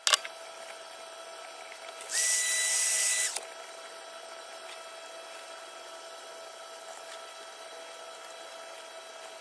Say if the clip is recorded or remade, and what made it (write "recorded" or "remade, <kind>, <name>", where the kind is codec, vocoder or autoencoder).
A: recorded